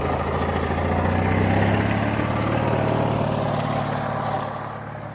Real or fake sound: real